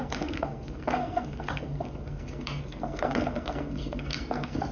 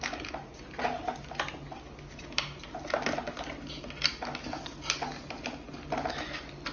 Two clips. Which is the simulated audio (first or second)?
first